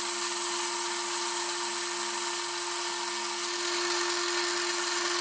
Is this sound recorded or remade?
recorded